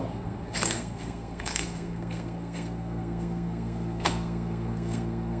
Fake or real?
fake